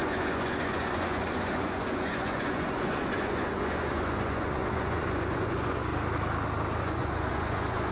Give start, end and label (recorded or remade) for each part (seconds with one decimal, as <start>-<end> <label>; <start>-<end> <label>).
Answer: 0.0-5.9 remade; 5.9-6.8 recorded; 6.8-7.9 remade